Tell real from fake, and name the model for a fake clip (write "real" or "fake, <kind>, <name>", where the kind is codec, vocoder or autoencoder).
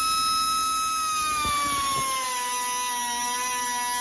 real